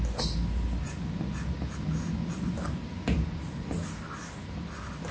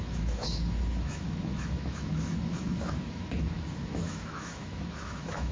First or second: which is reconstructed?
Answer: second